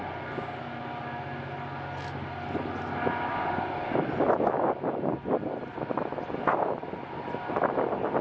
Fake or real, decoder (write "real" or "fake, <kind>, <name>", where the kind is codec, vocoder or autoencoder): real